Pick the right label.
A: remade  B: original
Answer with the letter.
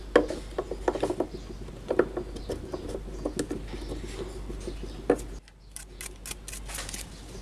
B